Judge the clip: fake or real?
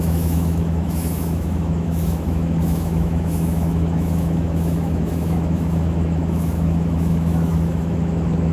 fake